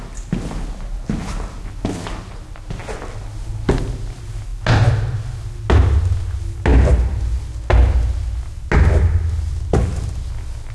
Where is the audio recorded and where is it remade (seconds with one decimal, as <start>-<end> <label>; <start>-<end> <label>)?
0.0-10.7 recorded